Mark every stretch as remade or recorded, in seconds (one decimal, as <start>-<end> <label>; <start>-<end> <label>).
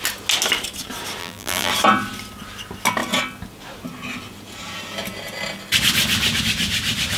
0.0-1.2 recorded; 1.2-1.7 remade; 1.7-7.2 recorded